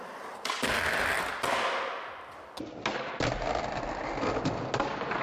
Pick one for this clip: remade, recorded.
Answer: recorded